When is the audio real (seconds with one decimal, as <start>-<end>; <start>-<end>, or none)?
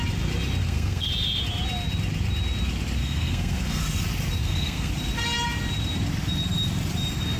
0.0-0.6; 1.1-3.0; 3.8-4.4; 4.9-7.4